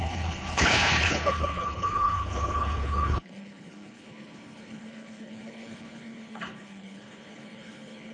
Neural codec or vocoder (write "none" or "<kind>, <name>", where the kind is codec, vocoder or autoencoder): codec, HILCodec